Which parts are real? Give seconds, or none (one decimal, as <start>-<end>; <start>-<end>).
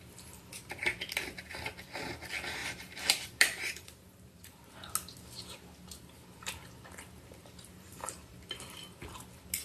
0.0-2.6; 4.9-7.4; 8.8-9.6